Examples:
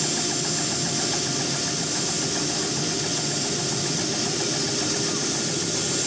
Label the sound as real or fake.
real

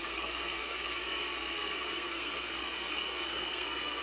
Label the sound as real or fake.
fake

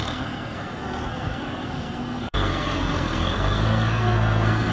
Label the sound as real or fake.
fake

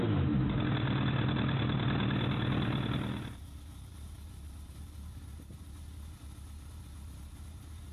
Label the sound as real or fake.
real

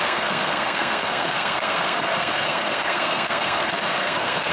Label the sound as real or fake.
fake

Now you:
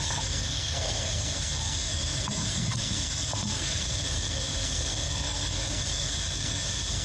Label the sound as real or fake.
fake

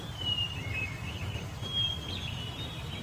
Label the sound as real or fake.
real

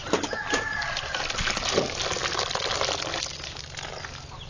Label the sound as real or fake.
real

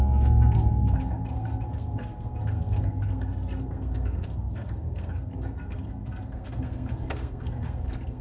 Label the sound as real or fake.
fake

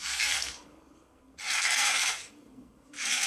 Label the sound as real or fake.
fake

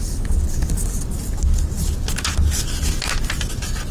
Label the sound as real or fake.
real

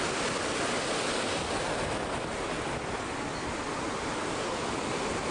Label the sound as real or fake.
real